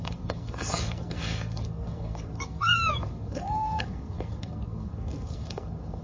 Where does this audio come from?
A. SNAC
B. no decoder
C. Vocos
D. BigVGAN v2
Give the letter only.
A